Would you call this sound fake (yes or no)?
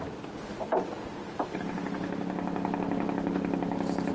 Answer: no